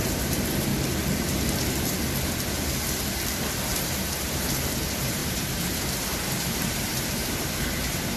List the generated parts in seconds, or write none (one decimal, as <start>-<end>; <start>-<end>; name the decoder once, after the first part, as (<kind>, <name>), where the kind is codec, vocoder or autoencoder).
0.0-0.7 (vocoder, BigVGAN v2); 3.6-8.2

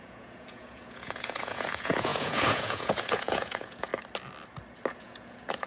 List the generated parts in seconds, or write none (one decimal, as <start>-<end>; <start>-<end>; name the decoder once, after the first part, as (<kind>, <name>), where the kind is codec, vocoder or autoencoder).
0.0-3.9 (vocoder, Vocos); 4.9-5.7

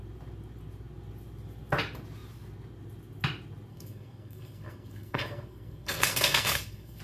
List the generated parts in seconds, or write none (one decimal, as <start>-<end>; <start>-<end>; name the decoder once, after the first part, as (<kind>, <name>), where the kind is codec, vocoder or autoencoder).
3.7-7.0 (codec, SNAC)

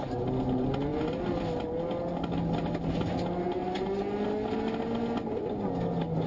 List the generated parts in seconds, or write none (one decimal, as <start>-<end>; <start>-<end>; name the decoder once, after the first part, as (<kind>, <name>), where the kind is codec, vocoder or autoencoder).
none

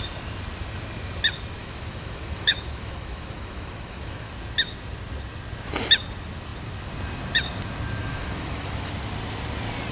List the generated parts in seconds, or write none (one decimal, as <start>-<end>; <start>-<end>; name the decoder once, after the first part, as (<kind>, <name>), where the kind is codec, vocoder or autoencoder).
1.6-4.3 (autoencoder, DAC-VAE); 8.0-8.9

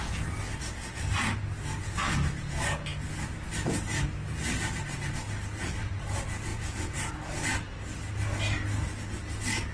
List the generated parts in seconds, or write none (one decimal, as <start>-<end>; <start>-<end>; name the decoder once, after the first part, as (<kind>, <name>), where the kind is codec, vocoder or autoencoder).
6.5-7.1 (vocoder, Vocos)

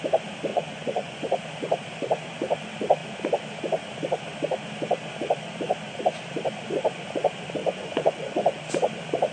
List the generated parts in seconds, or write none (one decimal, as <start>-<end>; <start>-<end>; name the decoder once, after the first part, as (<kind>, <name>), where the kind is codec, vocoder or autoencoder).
0.5-1.2 (vocoder, Vocos); 7.6-8.6

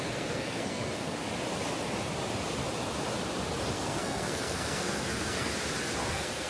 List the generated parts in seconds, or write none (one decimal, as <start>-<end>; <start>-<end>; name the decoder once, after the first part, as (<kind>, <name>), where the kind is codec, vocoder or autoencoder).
0.0-1.2 (codec, SNAC); 3.7-5.5; 6.1-6.5